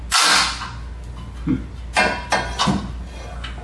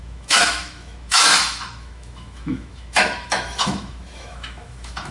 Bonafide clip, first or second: first